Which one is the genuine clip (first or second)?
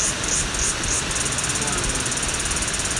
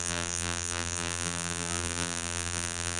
first